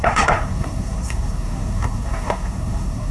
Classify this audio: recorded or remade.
remade